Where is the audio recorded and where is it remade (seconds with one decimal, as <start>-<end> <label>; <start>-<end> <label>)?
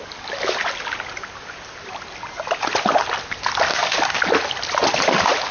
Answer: 0.0-3.7 recorded; 3.7-4.2 remade; 4.2-5.5 recorded